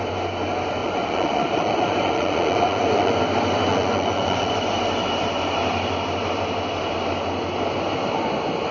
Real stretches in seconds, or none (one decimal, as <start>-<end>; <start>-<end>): 0.0-0.8; 3.2-3.7; 4.5-8.7